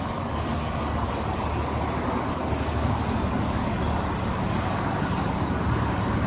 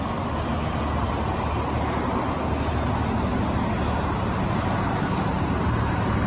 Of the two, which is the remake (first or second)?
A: first